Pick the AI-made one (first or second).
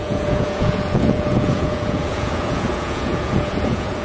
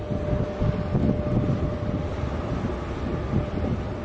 first